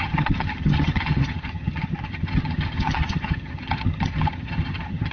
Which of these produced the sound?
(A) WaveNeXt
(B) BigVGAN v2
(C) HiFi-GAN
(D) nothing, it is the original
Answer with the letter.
C